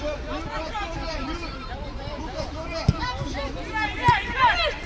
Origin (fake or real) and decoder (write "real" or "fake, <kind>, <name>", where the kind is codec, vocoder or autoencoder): fake, vocoder, BigVGAN v2